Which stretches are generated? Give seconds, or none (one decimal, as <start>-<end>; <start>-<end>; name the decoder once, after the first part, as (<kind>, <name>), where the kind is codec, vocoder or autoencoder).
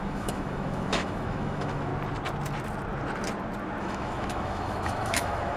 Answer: 0.0-1.9 (autoencoder, DAC-VAE); 3.8-5.6